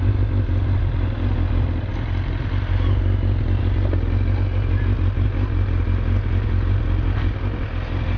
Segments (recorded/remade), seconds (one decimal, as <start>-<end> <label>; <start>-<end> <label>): 0.0-8.2 recorded